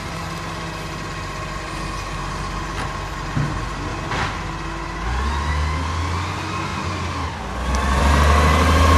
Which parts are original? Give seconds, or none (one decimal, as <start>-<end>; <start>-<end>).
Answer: 0.0-9.0